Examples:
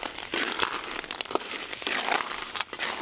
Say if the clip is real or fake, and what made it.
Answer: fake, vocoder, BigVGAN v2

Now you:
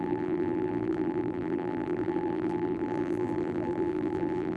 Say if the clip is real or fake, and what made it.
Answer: fake, vocoder, BigVGAN v2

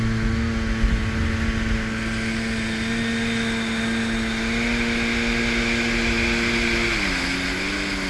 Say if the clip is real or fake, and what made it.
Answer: real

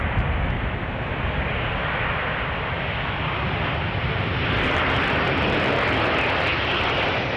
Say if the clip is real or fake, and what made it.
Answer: real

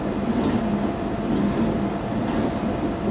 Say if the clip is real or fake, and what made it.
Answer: real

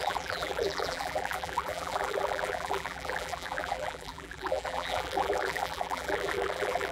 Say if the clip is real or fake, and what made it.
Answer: fake, vocoder, BigVGAN v2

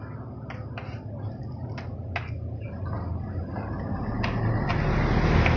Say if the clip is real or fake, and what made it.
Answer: real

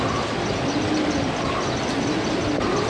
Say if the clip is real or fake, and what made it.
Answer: real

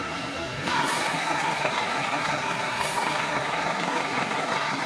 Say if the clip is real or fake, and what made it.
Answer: fake, codec, SNAC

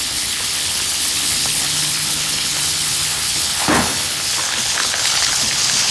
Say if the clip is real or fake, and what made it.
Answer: fake, codec, HILCodec